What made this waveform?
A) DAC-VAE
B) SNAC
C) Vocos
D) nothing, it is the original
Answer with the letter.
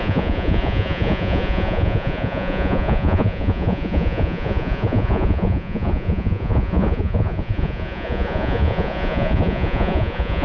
C